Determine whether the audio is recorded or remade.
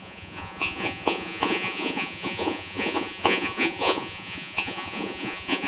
remade